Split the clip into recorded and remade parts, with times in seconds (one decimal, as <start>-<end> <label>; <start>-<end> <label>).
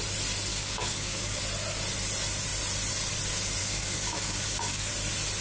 0.0-0.5 recorded; 0.5-1.4 remade; 1.4-3.6 recorded; 3.6-4.9 remade; 4.9-5.4 recorded